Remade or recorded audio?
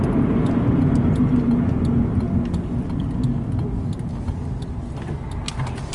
recorded